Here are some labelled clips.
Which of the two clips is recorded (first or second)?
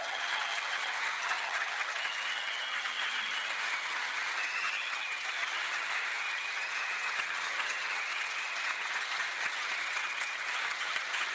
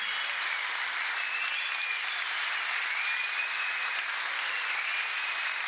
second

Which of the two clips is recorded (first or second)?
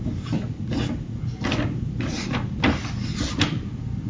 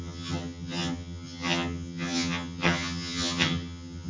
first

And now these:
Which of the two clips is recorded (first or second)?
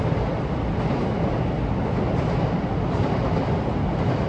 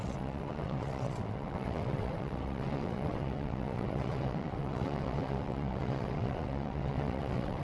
first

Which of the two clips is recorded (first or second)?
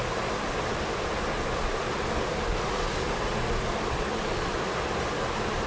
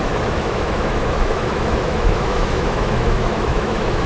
first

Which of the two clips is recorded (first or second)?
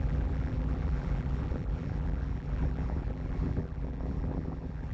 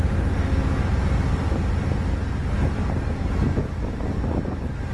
second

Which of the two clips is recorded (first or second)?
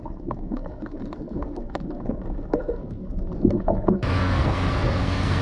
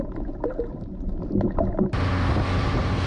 second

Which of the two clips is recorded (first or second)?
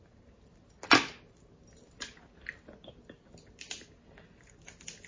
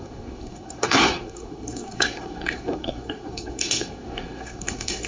first